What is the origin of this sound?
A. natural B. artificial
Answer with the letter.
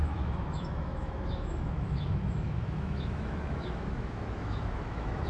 B